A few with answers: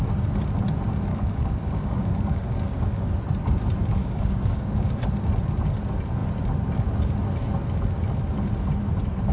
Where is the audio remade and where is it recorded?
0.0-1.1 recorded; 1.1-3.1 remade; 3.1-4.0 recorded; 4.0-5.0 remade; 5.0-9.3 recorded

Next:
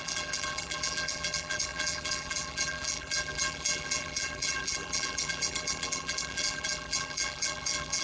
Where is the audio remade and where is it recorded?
0.0-8.0 remade

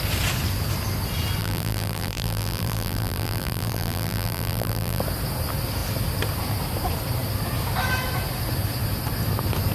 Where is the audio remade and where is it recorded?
0.0-1.4 recorded; 1.4-5.0 remade; 5.0-9.7 recorded

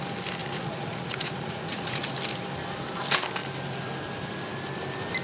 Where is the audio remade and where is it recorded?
0.0-0.4 recorded; 0.4-2.0 remade; 2.0-5.2 recorded

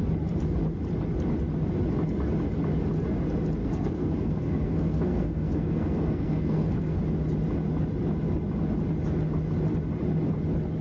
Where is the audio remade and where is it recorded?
0.0-3.6 recorded; 3.6-7.0 remade; 7.0-10.8 recorded

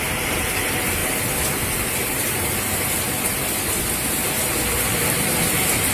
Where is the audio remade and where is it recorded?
0.0-5.9 recorded